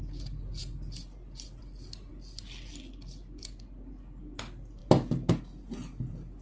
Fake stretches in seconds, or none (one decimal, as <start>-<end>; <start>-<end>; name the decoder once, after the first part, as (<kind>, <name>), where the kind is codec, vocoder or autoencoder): none